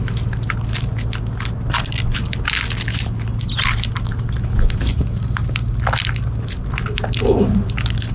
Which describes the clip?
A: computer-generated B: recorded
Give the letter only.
B